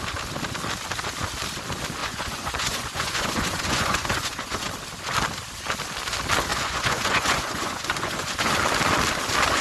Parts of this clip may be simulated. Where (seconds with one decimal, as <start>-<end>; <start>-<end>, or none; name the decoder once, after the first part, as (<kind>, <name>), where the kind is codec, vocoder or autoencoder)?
2.0-4.7 (vocoder, Vocos); 6.5-8.5

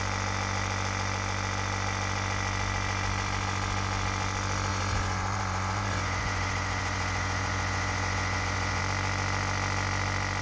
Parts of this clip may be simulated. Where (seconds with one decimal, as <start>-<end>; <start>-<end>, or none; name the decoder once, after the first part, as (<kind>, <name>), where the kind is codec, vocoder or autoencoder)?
4.7-8.8 (vocoder, Vocos)

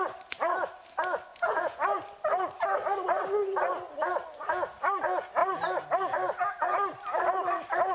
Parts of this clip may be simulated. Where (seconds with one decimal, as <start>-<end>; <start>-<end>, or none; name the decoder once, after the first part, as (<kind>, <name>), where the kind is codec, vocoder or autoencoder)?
1.3-2.0 (vocoder, Vocos)

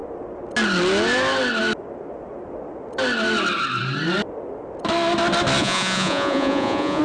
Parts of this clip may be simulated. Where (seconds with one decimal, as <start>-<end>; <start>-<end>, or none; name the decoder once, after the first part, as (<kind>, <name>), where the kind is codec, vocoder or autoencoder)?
5.6-7.0 (vocoder, Vocos)